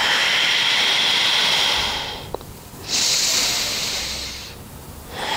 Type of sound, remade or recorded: recorded